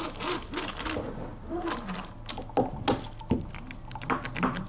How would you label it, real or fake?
real